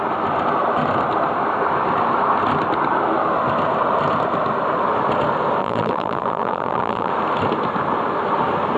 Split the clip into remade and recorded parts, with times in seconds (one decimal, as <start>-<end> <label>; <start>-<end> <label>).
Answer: 0.0-5.6 recorded; 5.6-7.1 remade; 7.1-8.8 recorded